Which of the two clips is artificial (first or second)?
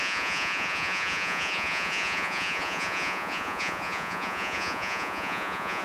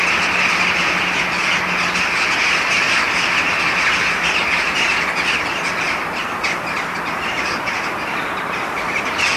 first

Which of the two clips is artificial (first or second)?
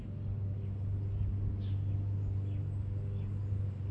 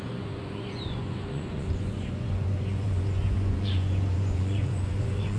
second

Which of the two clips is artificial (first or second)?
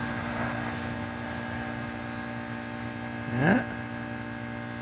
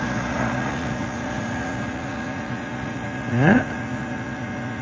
second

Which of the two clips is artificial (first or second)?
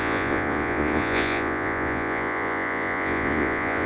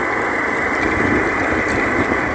first